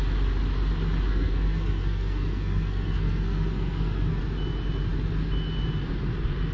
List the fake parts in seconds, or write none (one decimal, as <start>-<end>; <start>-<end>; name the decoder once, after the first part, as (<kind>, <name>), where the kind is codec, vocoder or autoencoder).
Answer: 1.1-4.2 (codec, SNAC)